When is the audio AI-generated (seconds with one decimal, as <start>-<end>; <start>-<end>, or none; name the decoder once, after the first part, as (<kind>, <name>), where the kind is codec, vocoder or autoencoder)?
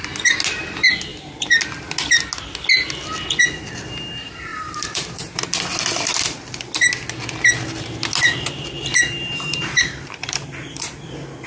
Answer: 1.1-1.6 (vocoder, BigVGAN v2); 4.5-5.4; 8.9-10.9